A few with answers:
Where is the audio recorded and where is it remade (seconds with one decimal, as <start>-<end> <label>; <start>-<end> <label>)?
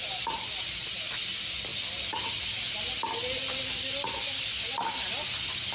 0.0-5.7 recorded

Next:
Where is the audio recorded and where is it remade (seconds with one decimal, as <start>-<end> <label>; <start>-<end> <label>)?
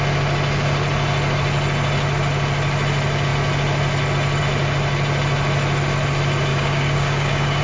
0.0-6.5 recorded; 6.5-7.6 remade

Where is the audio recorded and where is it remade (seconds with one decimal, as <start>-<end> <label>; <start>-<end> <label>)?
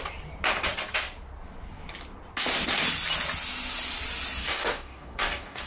0.0-4.4 recorded; 4.4-5.7 remade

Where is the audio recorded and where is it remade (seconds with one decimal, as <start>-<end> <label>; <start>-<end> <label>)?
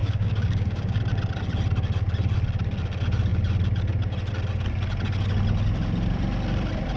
0.0-1.0 remade; 1.0-7.0 recorded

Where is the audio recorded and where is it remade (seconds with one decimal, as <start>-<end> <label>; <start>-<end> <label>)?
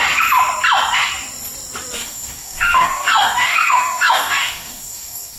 0.0-2.0 recorded; 2.0-5.4 remade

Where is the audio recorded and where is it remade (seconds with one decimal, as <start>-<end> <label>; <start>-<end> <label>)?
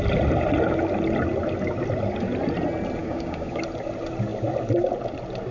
0.0-3.0 recorded; 3.0-3.6 remade; 3.6-5.5 recorded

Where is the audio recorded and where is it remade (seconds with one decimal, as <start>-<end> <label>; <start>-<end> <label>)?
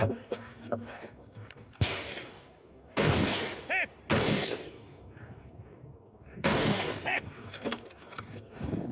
0.0-3.5 remade; 3.5-4.2 recorded; 4.2-8.9 remade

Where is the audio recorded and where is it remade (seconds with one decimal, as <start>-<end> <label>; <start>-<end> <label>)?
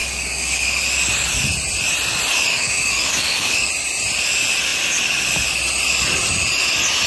0.0-0.7 remade; 0.7-2.5 recorded; 2.5-3.7 remade; 3.7-7.1 recorded